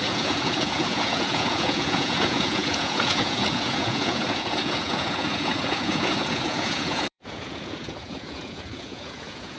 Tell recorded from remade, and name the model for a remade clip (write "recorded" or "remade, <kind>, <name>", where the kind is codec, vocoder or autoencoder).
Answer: remade, vocoder, Vocos